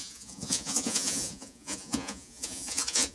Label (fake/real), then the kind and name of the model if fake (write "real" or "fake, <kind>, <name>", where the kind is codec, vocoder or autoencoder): fake, vocoder, Vocos